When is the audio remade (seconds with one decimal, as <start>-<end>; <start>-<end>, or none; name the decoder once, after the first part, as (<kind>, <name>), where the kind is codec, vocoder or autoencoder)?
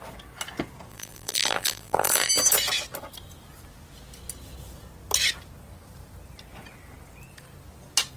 0.9-2.3 (vocoder, BigVGAN v2)